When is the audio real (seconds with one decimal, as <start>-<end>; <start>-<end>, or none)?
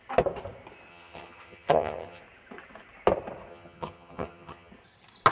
0.0-0.9; 2.2-3.5; 4.7-5.3